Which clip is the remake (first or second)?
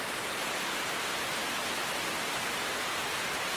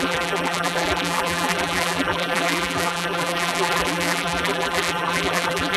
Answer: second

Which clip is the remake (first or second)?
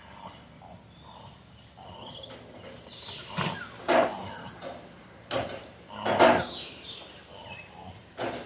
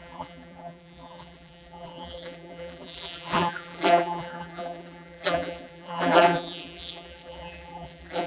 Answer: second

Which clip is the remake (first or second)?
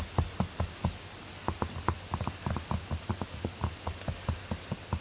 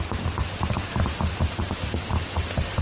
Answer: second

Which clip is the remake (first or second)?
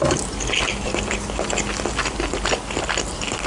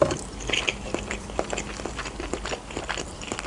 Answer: second